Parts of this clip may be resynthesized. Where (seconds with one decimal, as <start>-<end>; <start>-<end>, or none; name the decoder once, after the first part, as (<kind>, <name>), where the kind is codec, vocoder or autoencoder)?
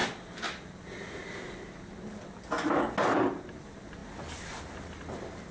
none